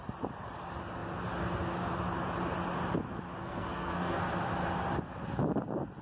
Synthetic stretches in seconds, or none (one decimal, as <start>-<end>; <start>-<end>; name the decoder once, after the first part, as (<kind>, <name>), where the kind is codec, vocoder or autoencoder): 3.4-4.2 (codec, SNAC)